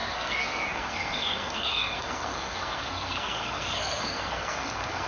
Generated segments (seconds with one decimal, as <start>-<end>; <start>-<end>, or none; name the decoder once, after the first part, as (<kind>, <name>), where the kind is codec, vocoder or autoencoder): 0.0-5.1 (codec, SNAC)